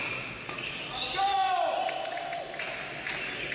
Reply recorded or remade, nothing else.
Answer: recorded